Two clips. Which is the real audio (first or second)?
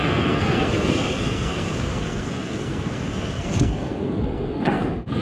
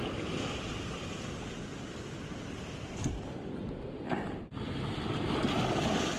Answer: second